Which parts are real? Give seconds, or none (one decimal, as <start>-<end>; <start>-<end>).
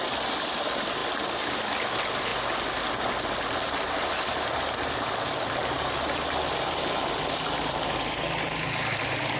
0.0-9.4